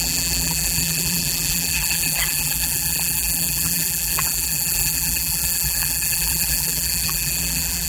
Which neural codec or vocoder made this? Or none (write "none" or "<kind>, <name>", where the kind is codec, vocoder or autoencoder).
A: vocoder, BigVGAN v2